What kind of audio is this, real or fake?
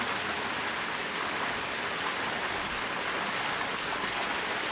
real